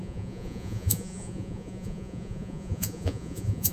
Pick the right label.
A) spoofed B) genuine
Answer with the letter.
A